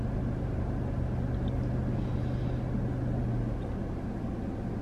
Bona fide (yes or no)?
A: yes